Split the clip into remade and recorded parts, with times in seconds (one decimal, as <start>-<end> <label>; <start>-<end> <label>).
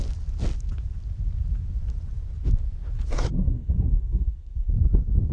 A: 0.0-3.1 recorded; 3.1-4.7 remade; 4.7-5.3 recorded